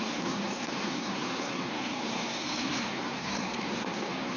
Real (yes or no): no